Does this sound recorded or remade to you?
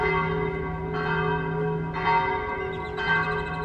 recorded